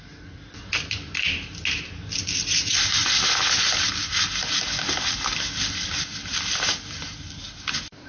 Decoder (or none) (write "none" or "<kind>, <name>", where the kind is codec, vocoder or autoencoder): none